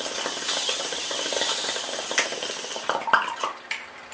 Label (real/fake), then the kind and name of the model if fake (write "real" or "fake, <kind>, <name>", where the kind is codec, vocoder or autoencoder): real